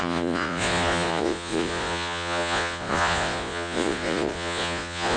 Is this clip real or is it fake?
fake